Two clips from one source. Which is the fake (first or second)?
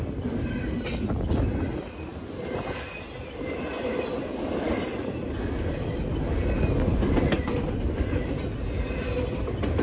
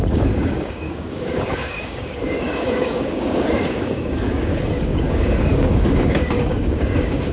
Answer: second